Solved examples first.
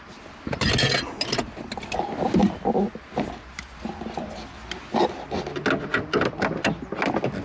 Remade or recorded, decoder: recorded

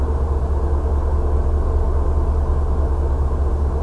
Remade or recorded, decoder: recorded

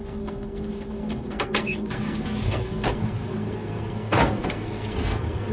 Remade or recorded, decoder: remade, codec, SNAC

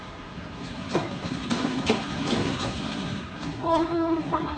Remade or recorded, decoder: remade, codec, SNAC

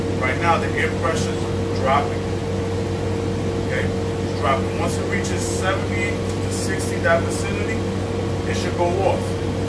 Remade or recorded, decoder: recorded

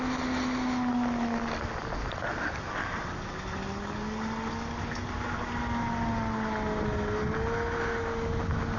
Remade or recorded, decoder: recorded